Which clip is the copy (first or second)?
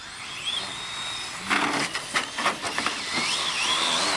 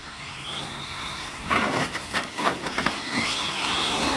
second